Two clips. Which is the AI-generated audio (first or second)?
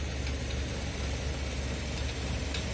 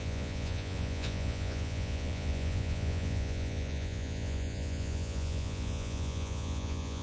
second